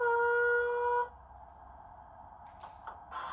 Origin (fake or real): real